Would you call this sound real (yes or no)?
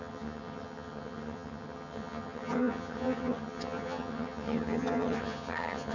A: no